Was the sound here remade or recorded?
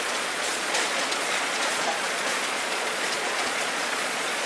remade